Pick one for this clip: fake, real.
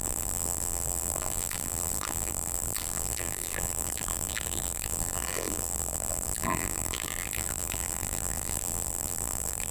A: fake